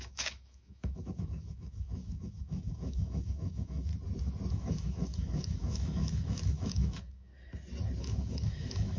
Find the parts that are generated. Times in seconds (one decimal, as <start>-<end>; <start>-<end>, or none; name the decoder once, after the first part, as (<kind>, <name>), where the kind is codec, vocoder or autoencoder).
0.0-3.9 (autoencoder, DAC-VAE); 4.5-7.3; 8.0-9.0